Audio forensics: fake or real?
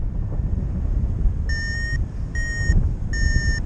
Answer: real